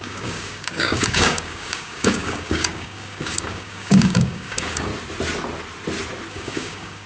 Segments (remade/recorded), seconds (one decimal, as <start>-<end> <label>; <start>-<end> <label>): 0.0-4.9 remade; 4.9-6.3 recorded; 6.3-7.1 remade